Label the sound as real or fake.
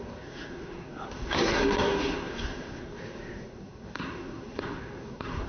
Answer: fake